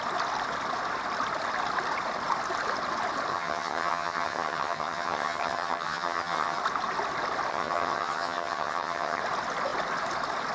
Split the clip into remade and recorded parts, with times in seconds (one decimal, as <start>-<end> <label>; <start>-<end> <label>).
0.0-3.3 recorded; 3.3-6.6 remade; 6.6-7.5 recorded; 7.5-9.2 remade; 9.2-10.5 recorded